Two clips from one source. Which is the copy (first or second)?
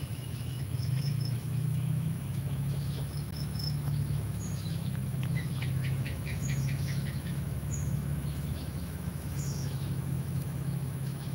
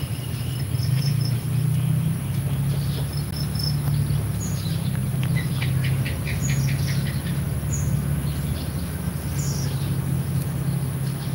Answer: first